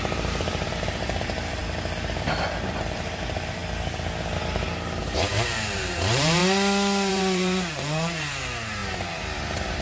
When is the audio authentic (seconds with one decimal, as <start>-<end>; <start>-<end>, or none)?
1.6-2.8; 3.6-5.0; 6.4-7.1